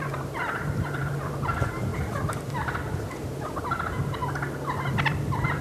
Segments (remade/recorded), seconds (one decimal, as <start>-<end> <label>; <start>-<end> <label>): 0.0-1.9 remade; 1.9-2.4 recorded; 2.4-4.2 remade; 4.2-5.1 recorded; 5.1-5.6 remade